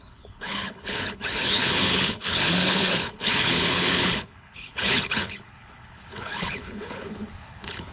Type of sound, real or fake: fake